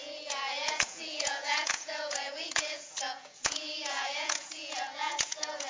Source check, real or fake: fake